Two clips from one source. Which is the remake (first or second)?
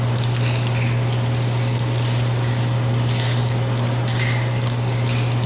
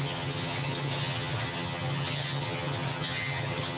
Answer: second